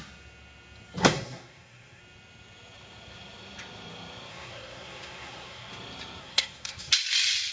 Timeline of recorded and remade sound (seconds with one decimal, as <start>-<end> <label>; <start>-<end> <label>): 0.0-1.0 recorded; 1.0-2.0 remade; 2.0-4.3 recorded; 4.3-5.7 remade; 5.7-6.2 recorded; 6.2-6.9 remade; 6.9-7.5 recorded